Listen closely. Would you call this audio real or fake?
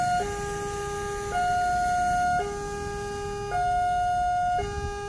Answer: real